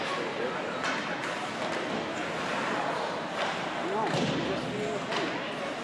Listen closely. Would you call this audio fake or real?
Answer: real